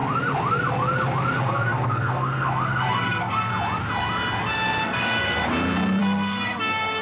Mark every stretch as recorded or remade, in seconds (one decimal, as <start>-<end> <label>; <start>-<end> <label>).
0.0-1.4 recorded; 1.4-3.5 remade; 3.5-4.5 recorded; 4.5-5.4 remade; 5.4-6.0 recorded; 6.0-7.0 remade